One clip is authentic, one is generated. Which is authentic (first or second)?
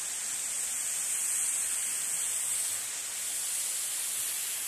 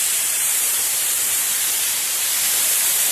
first